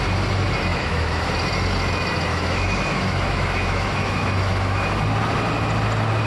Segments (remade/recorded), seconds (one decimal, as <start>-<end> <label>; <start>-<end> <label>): 0.0-0.7 recorded; 0.7-1.3 remade; 1.3-2.3 recorded; 2.3-4.9 remade; 4.9-6.3 recorded